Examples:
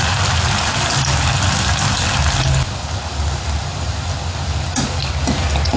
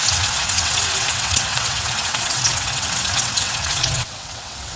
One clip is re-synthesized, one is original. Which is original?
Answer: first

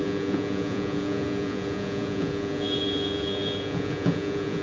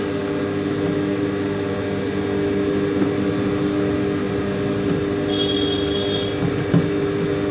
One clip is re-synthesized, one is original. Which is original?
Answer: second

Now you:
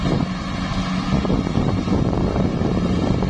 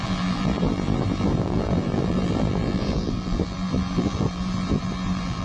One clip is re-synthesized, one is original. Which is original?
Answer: first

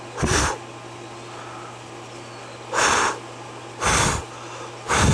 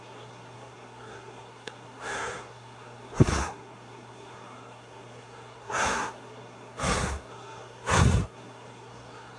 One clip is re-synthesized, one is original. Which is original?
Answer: first